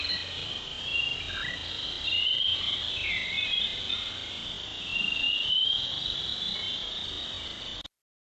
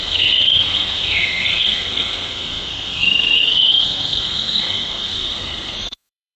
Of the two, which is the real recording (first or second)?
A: first